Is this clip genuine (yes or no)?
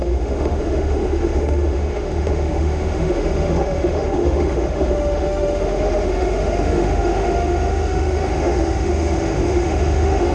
no